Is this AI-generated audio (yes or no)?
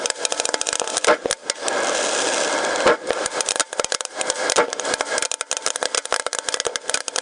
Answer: no